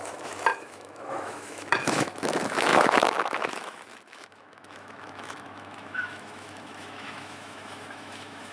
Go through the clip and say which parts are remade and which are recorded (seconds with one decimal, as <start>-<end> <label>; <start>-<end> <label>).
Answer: 0.0-8.5 remade